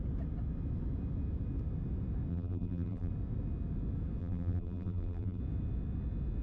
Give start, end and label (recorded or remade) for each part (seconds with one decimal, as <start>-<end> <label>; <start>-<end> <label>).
0.0-2.3 recorded; 2.3-3.1 remade; 3.1-4.2 recorded; 4.2-5.4 remade; 5.4-6.4 recorded